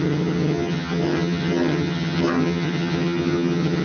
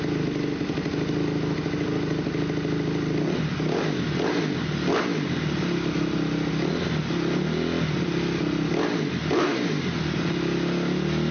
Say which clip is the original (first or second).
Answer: second